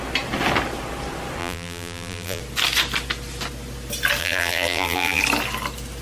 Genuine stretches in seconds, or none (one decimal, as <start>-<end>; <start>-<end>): 0.0-1.4; 2.4-4.2; 5.2-6.0